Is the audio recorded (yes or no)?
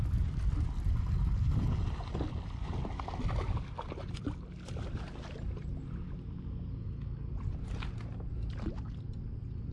yes